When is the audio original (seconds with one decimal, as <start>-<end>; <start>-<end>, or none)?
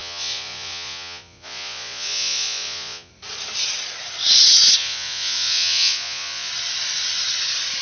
3.1-4.8; 6.5-7.8